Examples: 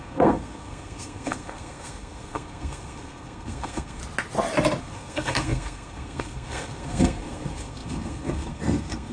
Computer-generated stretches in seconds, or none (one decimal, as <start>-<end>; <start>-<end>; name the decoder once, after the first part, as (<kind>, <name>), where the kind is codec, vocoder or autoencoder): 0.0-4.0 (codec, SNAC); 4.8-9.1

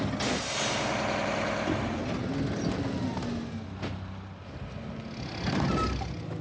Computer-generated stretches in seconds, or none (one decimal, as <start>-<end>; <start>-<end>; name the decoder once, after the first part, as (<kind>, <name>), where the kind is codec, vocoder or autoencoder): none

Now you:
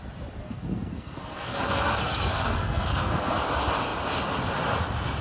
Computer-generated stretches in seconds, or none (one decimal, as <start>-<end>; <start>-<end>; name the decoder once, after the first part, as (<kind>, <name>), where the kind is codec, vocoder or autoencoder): 0.4-3.4 (codec, SNAC)